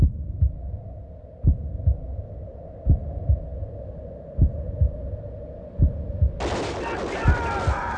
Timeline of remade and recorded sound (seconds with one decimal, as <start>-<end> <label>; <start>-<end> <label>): 0.0-8.0 recorded